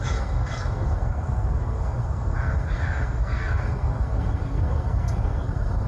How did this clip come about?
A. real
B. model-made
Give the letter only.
B